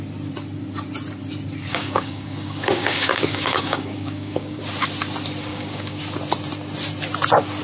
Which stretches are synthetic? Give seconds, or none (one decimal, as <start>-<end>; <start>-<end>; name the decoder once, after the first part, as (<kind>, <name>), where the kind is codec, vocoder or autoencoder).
1.7-4.6 (codec, DAC); 5.5-6.0